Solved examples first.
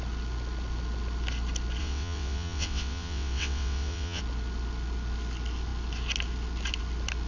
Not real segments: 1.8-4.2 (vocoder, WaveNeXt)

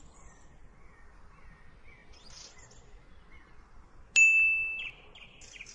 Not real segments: none

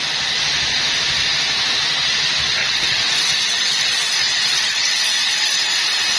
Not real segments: 2.6-5.7 (vocoder, WaveNeXt)

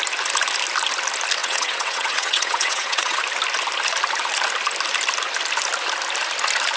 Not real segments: 1.4-3.2 (vocoder, WaveNeXt)

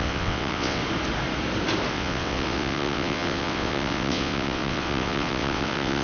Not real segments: 0.0-0.8 (vocoder, WaveNeXt); 1.9-6.0